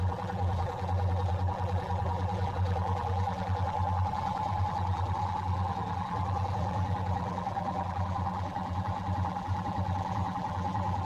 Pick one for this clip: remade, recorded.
remade